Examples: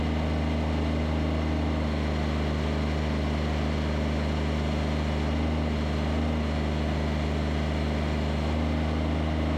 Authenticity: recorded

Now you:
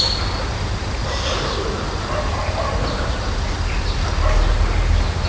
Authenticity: recorded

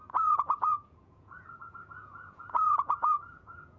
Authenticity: remade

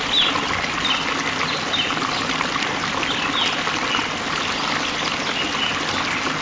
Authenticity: recorded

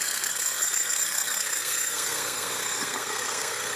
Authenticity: remade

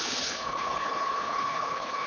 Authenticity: remade